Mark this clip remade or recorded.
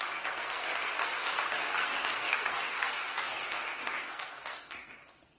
remade